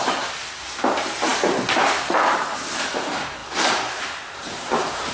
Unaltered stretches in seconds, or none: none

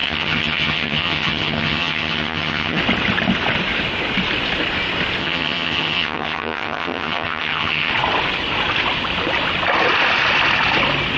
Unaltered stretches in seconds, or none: 2.8-5.2; 7.9-11.2